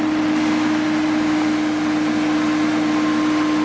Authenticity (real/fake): real